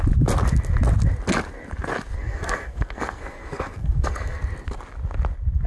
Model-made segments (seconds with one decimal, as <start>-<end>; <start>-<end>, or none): 2.2-4.4